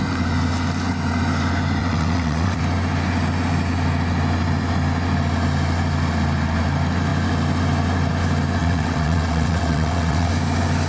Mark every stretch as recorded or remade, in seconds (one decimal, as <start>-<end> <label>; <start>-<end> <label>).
0.0-1.8 recorded; 1.8-2.6 remade; 2.6-8.6 recorded; 8.6-10.3 remade; 10.3-10.9 recorded